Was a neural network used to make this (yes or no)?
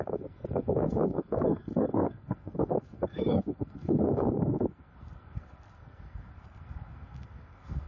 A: yes